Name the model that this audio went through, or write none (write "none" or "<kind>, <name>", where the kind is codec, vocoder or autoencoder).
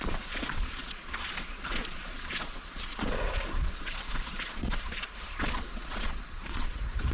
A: vocoder, Vocos